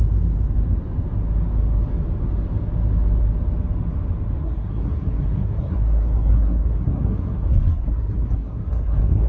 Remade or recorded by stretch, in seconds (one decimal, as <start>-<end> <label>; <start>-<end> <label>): 0.0-4.4 recorded; 4.4-9.3 remade